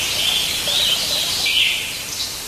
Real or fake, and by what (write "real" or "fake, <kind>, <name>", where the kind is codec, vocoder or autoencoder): real